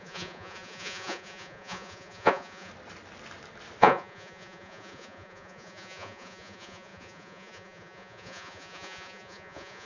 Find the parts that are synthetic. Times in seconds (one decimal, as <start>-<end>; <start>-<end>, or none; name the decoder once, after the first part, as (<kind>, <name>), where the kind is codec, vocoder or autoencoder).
0.0-2.7 (vocoder, Vocos); 3.8-9.9